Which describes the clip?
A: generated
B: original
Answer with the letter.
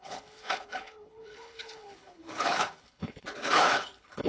A